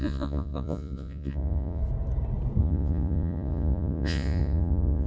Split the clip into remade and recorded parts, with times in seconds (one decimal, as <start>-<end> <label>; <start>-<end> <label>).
0.0-1.8 remade; 1.8-2.6 recorded; 2.6-5.1 remade